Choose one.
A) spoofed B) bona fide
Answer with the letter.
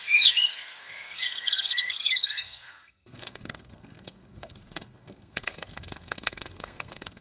A